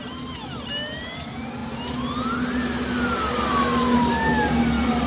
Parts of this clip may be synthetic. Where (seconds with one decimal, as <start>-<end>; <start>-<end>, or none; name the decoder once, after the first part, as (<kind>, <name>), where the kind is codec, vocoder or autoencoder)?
none